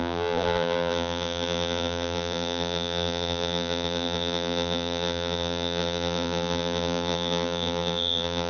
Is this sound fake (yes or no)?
yes